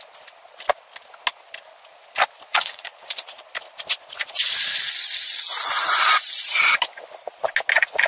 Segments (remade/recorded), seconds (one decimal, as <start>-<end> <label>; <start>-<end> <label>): 0.0-2.5 recorded; 2.5-3.4 remade; 3.4-8.1 recorded